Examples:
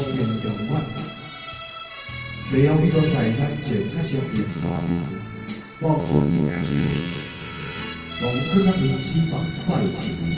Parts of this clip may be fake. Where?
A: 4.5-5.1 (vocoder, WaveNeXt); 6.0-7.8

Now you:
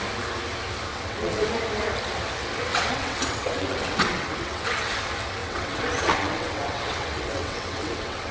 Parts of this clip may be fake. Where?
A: 0.9-1.5 (vocoder, WaveNeXt); 2.7-4.9; 5.4-8.3

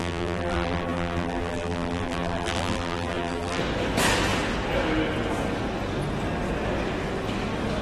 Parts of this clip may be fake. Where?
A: 0.0-3.6 (vocoder, BigVGAN v2)

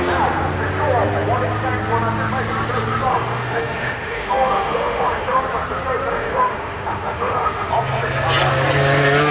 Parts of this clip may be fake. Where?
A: 3.1-5.4 (autoencoder, DAC-VAE); 6.1-7.7

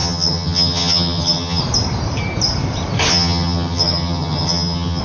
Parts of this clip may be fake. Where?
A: 0.0-1.6 (vocoder, HiFi-GAN); 3.1-5.0